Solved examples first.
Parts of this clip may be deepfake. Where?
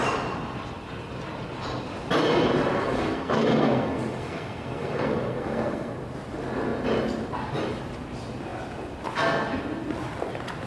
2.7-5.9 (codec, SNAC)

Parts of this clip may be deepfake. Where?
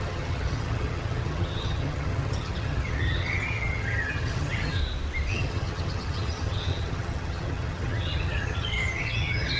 0.0-4.8 (vocoder, HiFi-GAN); 5.3-9.6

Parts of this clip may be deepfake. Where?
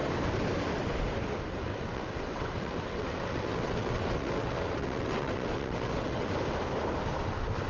1.7-6.3 (vocoder, WaveNeXt)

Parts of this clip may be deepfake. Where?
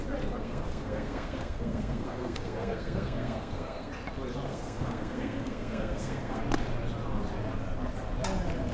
0.4-3.9 (codec, SNAC); 4.5-6.4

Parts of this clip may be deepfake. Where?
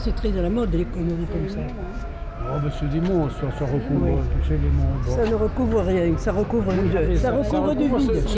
0.9-2.3 (codec, DAC); 4.0-4.9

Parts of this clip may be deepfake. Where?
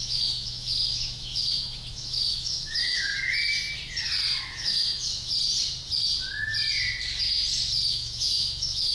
0.0-3.1 (autoencoder, DAC-VAE); 4.4-5.3; 7.9-8.9